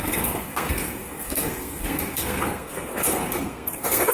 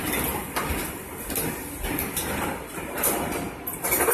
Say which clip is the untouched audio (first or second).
second